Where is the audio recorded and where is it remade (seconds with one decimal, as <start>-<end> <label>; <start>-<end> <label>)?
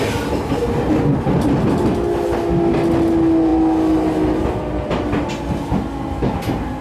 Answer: 0.0-6.8 recorded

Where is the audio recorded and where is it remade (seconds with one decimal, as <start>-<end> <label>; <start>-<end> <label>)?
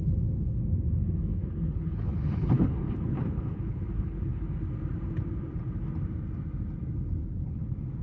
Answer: 0.0-1.3 recorded; 1.3-4.4 remade; 4.4-7.2 recorded; 7.2-8.0 remade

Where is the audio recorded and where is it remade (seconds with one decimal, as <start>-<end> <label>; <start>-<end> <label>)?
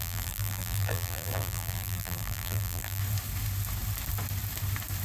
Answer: 0.0-3.0 remade; 3.0-5.0 recorded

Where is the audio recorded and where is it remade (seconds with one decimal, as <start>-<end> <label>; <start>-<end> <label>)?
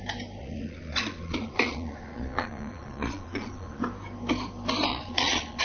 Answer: 0.0-0.4 recorded; 0.4-3.8 remade; 3.8-4.9 recorded; 4.9-5.6 remade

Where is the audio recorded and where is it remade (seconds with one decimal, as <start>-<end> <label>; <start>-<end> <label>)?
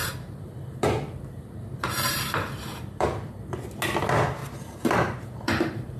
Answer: 0.0-3.6 remade; 3.6-4.4 recorded; 4.4-6.0 remade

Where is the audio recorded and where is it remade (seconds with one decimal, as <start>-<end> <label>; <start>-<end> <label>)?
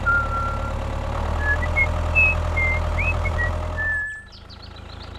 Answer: 0.0-2.9 recorded; 2.9-3.5 remade; 3.5-5.2 recorded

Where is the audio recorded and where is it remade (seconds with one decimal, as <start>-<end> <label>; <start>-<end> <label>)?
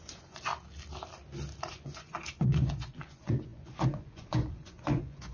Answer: 0.0-0.5 remade; 0.5-1.7 recorded; 1.7-5.3 remade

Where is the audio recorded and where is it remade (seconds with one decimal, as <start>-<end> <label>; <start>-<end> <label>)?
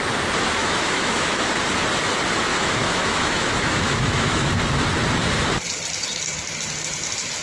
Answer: 0.0-0.6 recorded; 0.6-1.5 remade; 1.5-2.5 recorded; 2.5-4.5 remade; 4.5-7.4 recorded